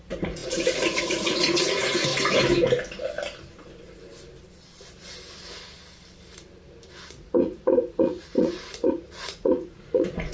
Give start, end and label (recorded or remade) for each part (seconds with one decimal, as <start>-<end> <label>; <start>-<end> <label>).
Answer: 0.0-2.1 remade; 2.1-7.1 recorded; 7.1-10.3 remade